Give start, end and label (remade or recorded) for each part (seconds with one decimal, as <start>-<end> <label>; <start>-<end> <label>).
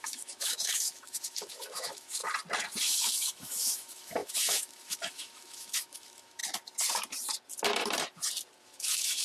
0.0-2.2 remade; 2.2-2.8 recorded; 2.8-6.4 remade; 6.4-8.6 recorded; 8.6-9.2 remade